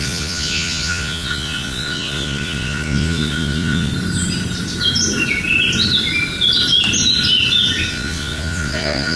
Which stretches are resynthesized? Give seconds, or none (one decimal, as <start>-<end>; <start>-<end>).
0.0-3.9; 7.9-9.2